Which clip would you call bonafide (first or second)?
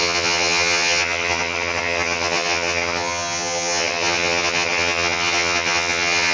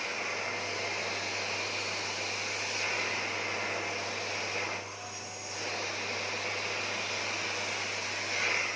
second